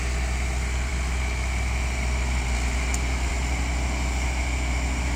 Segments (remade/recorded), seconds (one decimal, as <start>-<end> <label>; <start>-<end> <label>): 0.0-5.2 recorded